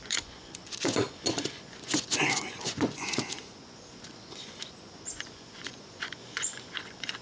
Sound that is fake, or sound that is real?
fake